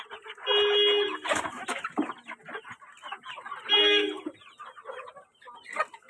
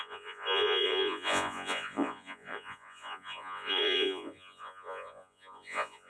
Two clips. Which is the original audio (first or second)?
first